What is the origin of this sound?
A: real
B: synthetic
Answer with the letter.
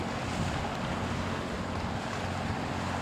A